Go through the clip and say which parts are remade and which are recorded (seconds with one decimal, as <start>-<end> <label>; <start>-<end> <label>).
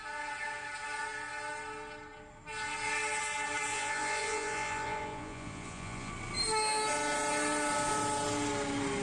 0.0-3.7 recorded; 3.7-6.1 remade; 6.1-9.0 recorded